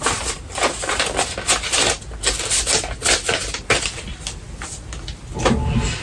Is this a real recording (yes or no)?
yes